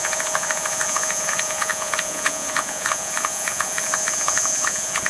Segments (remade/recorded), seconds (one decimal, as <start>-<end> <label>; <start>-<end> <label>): 0.0-5.1 remade